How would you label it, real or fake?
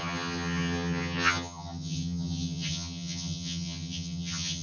fake